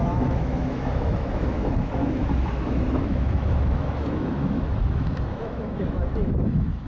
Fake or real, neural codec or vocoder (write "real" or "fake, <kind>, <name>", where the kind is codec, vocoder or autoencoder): fake, autoencoder, DAC-VAE